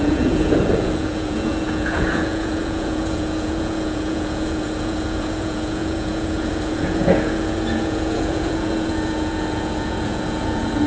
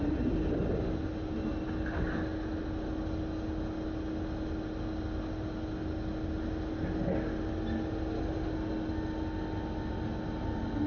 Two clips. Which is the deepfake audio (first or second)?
first